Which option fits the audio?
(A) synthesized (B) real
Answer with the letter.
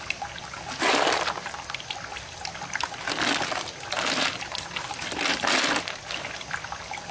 B